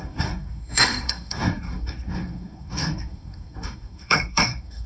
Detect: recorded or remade remade